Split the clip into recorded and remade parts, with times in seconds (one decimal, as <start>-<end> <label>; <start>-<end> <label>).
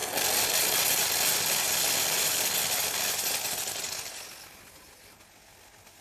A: 0.0-6.0 recorded